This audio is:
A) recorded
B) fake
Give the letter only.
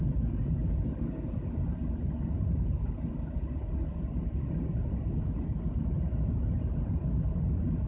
A